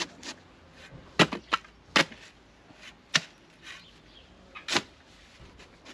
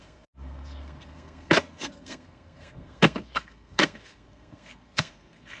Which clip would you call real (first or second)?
first